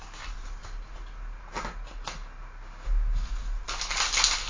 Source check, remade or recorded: recorded